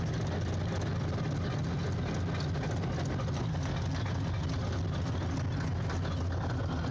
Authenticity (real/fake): real